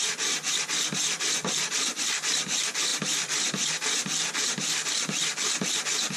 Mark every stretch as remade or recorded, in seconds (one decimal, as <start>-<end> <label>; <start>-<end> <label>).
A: 0.0-2.9 recorded; 2.9-5.8 remade; 5.8-6.2 recorded